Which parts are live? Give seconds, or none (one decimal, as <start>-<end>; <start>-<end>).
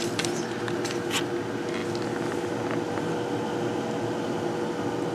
0.0-5.1